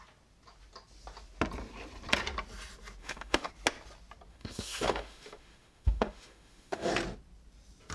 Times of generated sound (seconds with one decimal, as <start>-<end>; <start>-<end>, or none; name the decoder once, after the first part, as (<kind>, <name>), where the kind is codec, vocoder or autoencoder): 3.0-3.5 (autoencoder, DAC-VAE); 4.3-6.9